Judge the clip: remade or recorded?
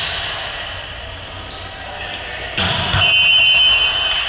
recorded